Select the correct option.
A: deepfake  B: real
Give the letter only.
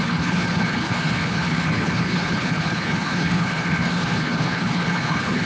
A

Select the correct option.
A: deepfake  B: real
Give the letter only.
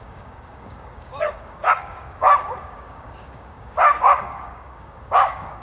A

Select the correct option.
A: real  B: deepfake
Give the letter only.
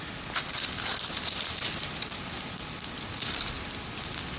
A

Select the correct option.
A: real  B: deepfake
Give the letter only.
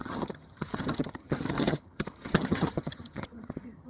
B